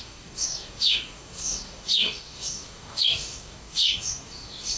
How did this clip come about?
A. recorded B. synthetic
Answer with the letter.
B